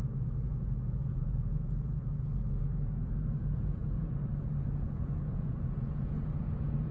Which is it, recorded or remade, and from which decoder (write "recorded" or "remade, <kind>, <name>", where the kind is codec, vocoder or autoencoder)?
remade, vocoder, Vocos